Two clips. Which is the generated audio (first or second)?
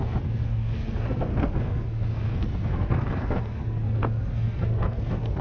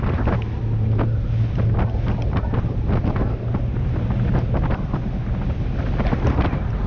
first